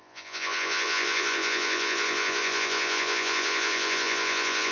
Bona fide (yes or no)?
no